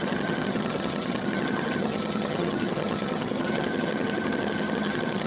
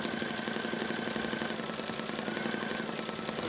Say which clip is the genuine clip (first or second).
second